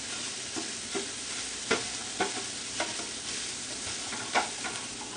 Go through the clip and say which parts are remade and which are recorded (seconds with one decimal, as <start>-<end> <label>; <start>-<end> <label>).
0.0-5.2 recorded